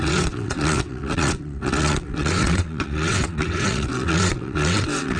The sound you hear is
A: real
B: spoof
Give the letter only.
B